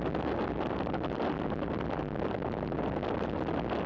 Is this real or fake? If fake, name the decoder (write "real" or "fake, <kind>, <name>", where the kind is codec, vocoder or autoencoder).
real